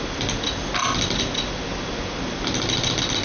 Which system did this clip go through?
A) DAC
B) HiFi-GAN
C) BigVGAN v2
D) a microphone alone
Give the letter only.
D